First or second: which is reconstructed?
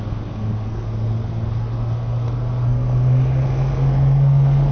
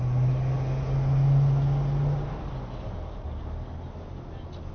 first